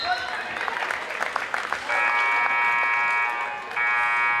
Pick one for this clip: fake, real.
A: real